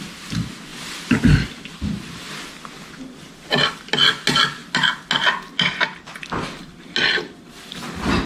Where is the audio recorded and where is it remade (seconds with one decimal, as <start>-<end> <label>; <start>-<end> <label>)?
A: 0.0-0.7 recorded; 0.7-2.3 remade; 2.3-8.2 recorded